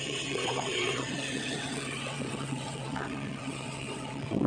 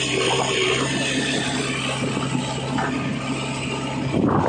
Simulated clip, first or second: first